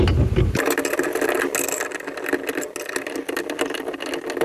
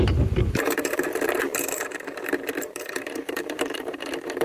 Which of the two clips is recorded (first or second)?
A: first